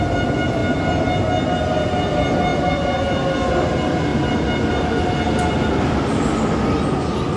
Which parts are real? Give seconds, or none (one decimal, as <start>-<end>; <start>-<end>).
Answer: 0.0-7.4